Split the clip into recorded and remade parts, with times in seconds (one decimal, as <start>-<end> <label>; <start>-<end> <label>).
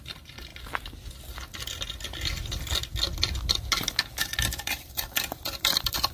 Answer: 0.0-0.5 remade; 0.5-4.2 recorded; 4.2-6.1 remade